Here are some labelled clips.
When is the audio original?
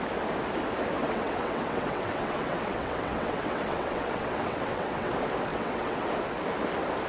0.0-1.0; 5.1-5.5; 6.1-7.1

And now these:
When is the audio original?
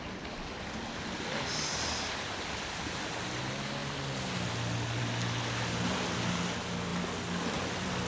0.0-8.1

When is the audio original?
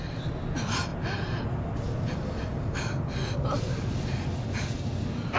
0.0-5.4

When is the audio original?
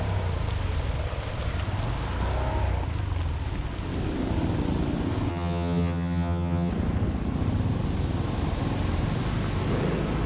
0.0-5.3; 6.7-10.3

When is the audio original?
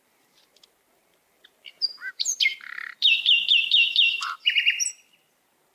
0.0-1.9; 4.6-5.7